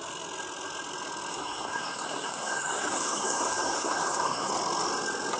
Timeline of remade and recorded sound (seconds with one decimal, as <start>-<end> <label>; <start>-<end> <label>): 0.0-1.3 recorded; 1.3-4.5 remade; 4.5-5.4 recorded